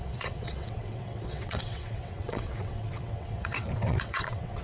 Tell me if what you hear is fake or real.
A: fake